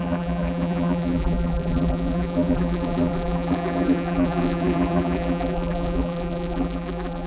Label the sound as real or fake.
fake